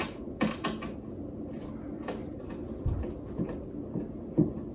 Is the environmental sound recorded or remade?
recorded